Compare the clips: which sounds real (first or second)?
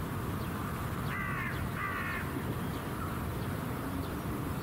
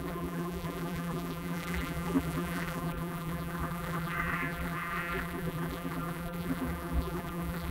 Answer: first